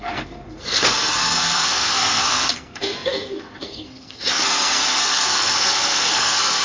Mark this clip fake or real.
fake